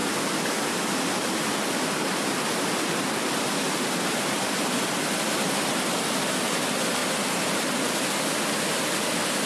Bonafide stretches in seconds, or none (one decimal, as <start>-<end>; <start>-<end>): 0.0-9.5